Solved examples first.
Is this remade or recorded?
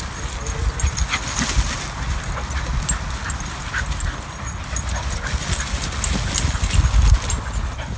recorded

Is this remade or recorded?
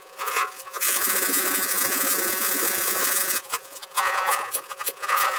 remade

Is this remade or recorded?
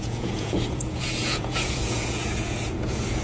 remade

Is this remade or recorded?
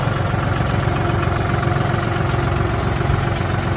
recorded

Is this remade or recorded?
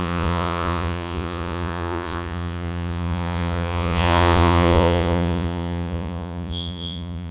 remade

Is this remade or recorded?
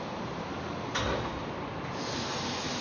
recorded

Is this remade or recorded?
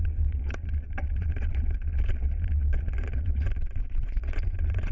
remade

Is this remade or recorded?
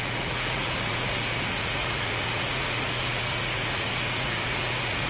remade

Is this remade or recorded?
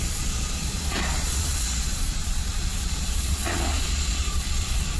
remade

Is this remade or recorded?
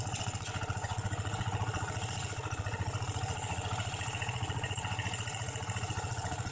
remade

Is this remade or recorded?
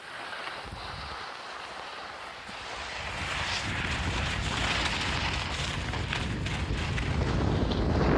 recorded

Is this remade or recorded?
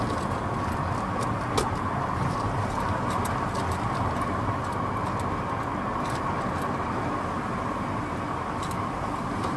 recorded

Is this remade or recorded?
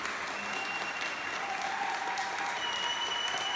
recorded